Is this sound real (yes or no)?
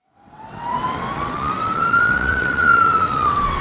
no